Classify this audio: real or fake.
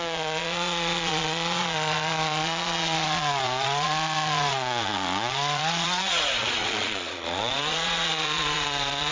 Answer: fake